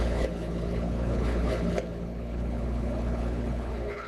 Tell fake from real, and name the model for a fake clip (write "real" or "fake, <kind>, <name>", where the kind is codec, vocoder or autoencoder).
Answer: fake, codec, HILCodec